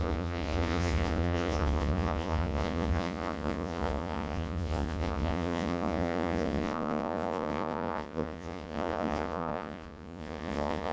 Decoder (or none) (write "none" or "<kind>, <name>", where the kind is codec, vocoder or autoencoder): vocoder, Vocos